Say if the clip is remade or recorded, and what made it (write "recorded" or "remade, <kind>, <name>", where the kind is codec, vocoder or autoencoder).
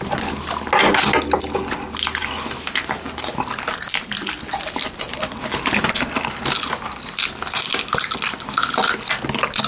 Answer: recorded